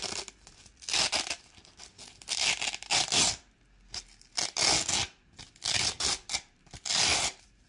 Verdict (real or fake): real